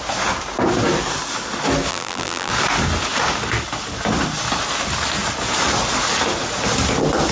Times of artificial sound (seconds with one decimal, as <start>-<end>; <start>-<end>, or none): 1.9-2.5